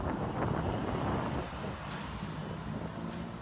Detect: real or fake real